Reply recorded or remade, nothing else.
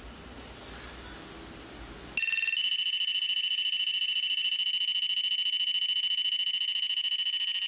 recorded